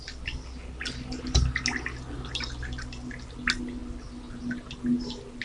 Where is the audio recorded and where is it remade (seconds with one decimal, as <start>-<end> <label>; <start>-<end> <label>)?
0.0-5.4 recorded